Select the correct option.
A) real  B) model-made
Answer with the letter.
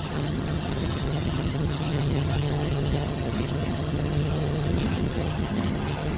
B